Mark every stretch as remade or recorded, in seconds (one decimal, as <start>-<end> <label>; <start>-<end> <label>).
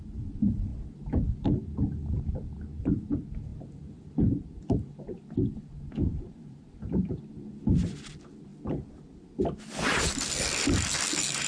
0.0-8.5 remade; 8.5-9.7 recorded; 9.7-11.5 remade